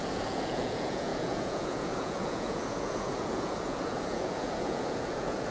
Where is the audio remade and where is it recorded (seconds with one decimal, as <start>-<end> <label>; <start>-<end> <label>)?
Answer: 0.0-5.5 remade